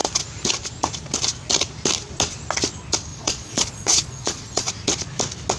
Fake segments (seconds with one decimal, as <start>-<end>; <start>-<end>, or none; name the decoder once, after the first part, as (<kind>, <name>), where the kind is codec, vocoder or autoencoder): 3.1-4.7 (vocoder, Vocos)